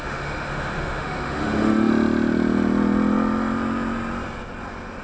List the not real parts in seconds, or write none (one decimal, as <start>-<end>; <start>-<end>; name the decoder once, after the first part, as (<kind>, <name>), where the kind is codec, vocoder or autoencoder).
0.0-1.9 (autoencoder, DAC-VAE)